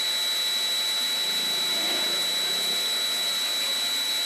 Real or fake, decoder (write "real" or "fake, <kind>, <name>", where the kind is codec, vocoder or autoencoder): real